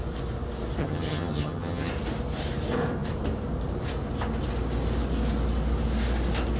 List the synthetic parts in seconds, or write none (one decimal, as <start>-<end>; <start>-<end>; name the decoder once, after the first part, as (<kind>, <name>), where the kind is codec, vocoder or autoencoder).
0.8-1.9 (vocoder, HiFi-GAN)